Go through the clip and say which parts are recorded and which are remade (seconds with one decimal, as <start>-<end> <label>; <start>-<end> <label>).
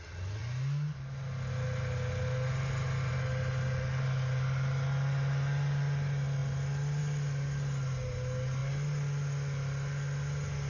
0.0-10.7 recorded